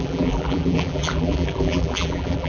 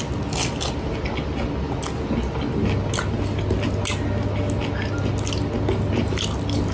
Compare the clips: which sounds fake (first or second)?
first